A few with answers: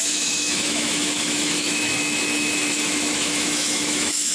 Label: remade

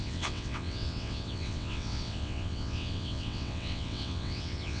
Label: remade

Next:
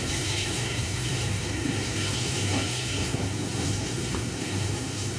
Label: remade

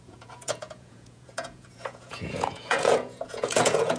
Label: remade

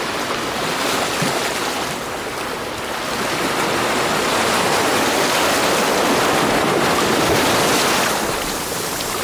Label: recorded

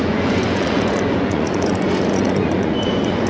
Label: remade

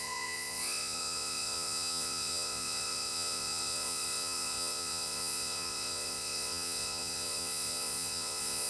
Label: remade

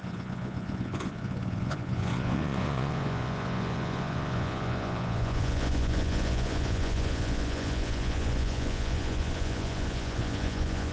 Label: remade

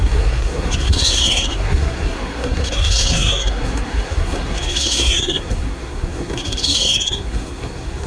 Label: remade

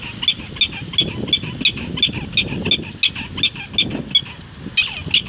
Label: recorded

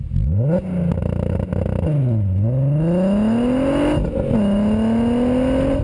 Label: recorded